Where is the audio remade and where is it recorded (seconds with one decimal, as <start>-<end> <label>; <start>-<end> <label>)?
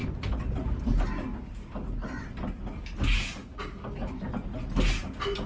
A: 0.0-3.4 recorded; 3.4-4.1 remade; 4.1-5.5 recorded